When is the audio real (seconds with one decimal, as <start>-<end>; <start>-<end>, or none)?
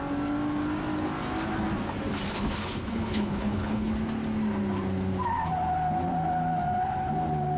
0.0-2.3; 3.9-7.6